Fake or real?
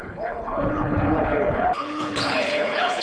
fake